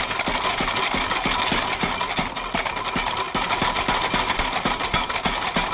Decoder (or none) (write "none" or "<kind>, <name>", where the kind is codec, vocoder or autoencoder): none